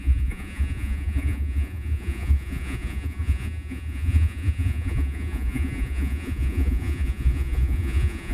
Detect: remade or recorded remade